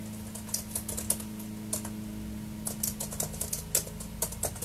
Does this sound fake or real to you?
real